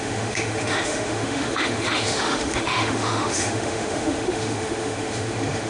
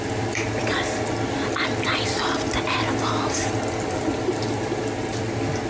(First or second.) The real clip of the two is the second